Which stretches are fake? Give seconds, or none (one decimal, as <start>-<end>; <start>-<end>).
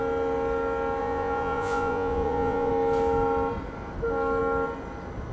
1.0-2.7